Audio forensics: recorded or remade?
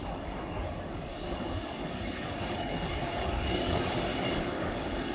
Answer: remade